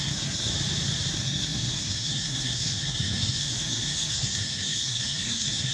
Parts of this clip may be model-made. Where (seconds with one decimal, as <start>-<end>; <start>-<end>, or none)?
0.0-0.5; 1.1-5.7